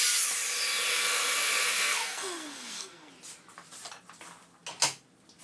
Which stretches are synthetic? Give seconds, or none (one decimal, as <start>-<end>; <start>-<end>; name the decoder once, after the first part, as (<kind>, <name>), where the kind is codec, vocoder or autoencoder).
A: 0.9-3.1 (codec, SNAC)